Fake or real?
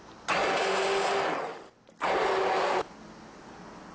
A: real